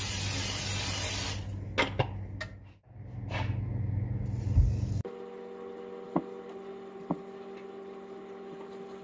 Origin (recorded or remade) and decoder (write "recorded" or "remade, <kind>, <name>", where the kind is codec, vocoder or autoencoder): recorded